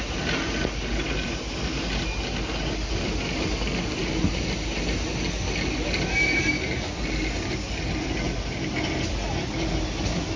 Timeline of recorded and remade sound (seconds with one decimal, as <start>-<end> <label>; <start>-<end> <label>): 0.0-10.4 recorded